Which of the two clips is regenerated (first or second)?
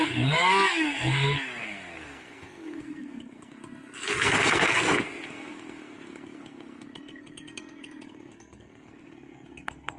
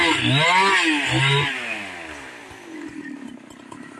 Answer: first